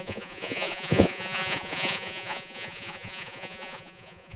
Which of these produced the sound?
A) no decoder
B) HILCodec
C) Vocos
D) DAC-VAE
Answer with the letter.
C